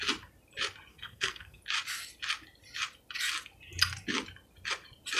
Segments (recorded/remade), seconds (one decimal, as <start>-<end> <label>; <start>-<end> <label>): 0.0-0.9 recorded; 0.9-1.6 remade; 1.6-5.2 recorded

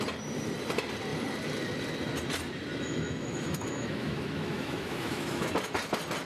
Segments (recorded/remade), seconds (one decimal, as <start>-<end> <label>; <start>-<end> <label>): 0.0-2.7 recorded; 2.7-5.5 remade; 5.5-6.3 recorded

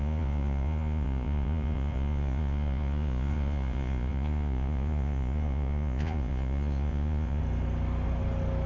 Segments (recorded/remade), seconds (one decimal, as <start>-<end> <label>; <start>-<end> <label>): 0.0-7.4 remade; 7.4-8.7 recorded

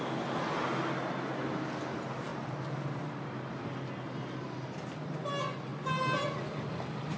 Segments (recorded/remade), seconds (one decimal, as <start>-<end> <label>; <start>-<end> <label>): 0.0-2.3 recorded; 2.3-3.0 remade; 3.0-5.7 recorded; 5.7-6.4 remade; 6.4-7.2 recorded